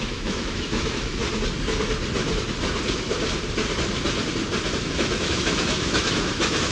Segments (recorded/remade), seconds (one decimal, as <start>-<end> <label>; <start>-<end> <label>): 0.0-1.2 remade; 1.2-4.8 recorded; 4.8-6.7 remade